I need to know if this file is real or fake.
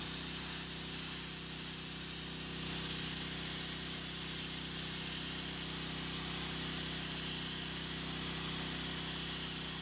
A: real